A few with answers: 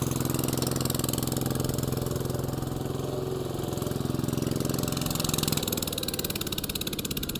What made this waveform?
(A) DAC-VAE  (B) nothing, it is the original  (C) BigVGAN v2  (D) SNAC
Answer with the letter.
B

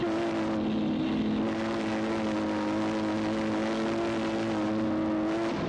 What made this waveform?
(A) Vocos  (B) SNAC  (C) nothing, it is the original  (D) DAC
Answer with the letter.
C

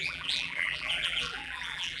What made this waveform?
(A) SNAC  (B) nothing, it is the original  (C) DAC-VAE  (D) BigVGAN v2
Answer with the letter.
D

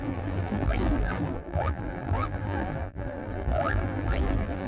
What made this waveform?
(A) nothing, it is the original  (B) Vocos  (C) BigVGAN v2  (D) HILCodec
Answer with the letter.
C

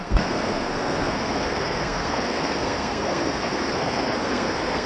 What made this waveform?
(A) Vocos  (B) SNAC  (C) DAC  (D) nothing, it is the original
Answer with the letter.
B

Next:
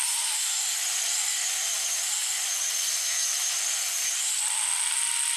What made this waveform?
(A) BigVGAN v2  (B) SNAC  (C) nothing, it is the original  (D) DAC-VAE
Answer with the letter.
C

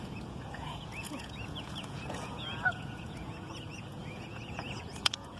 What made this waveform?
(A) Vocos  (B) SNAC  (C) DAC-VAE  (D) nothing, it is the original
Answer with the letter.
A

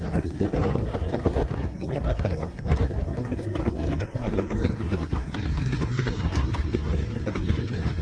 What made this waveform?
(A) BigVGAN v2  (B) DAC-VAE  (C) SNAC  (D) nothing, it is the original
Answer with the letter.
C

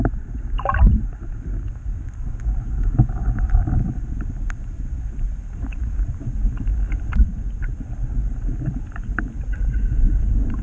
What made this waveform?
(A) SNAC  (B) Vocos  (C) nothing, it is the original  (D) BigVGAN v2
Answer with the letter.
D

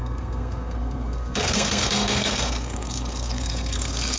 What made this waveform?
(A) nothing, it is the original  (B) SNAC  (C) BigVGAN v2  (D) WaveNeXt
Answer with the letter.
B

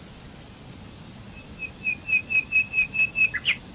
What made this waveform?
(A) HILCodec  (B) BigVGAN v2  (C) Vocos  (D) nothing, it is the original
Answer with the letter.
D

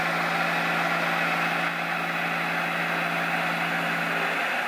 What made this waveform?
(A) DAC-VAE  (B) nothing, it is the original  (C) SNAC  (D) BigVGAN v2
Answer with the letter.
B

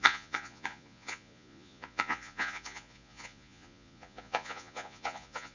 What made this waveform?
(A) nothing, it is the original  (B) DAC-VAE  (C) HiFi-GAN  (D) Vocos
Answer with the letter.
D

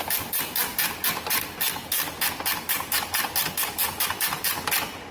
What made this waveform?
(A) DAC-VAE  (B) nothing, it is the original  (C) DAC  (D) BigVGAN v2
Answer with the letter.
B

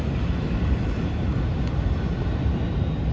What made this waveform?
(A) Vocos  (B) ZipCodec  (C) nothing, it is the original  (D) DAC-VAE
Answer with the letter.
C